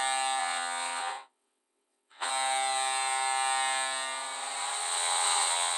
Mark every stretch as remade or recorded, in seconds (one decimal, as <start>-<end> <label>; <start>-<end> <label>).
0.0-0.4 recorded; 0.4-2.3 remade; 2.3-4.8 recorded; 4.8-5.8 remade